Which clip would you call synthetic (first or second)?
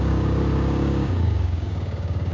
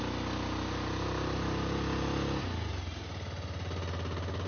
first